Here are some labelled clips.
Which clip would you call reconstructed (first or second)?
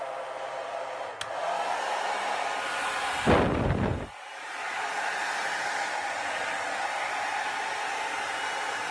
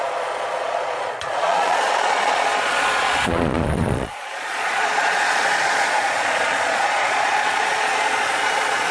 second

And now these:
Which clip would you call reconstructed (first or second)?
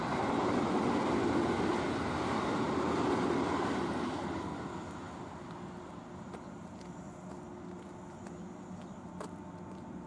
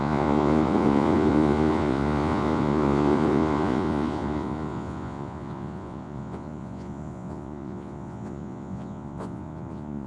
second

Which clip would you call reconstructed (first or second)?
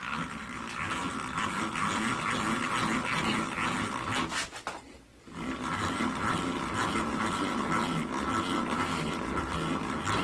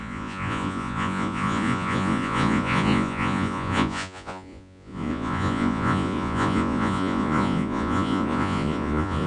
second